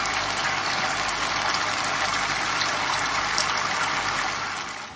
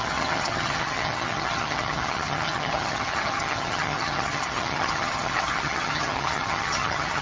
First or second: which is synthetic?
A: second